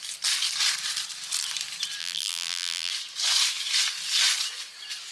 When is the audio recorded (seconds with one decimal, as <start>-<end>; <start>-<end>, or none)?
0.0-2.0; 2.9-5.1

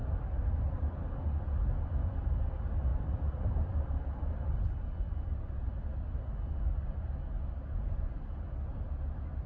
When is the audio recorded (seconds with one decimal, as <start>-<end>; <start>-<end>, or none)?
1.1-2.9; 5.7-9.5